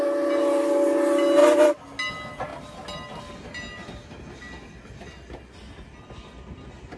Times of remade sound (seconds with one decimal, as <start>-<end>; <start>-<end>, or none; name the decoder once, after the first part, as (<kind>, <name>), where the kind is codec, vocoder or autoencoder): none